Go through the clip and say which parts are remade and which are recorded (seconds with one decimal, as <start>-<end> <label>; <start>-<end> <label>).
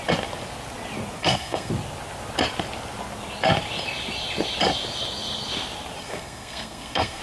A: 0.0-1.2 recorded; 1.2-1.7 remade; 1.7-6.0 recorded; 6.0-7.2 remade